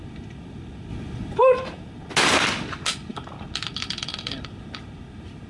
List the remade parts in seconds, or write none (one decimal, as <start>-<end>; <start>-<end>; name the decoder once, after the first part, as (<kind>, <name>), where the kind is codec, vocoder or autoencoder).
none